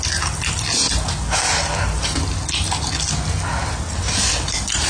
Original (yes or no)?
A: yes